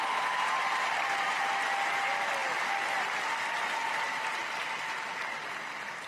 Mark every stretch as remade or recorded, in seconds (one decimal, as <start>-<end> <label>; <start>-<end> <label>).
0.0-2.4 remade; 2.4-3.3 recorded; 3.3-6.1 remade